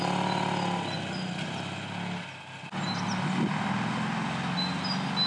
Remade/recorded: recorded